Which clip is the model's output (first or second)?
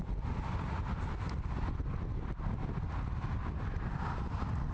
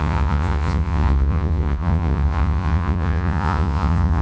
second